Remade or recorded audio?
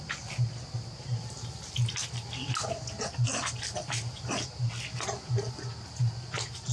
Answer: recorded